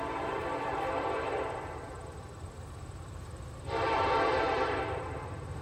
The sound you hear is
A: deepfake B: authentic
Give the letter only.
A